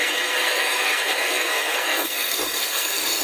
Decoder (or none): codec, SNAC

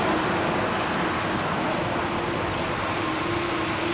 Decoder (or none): none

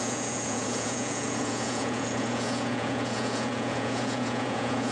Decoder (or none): vocoder, Vocos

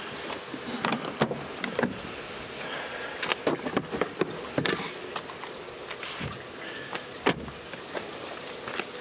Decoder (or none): none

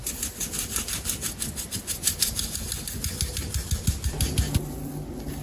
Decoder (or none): none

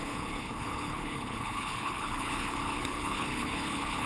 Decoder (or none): codec, HILCodec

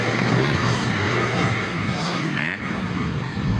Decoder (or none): codec, SNAC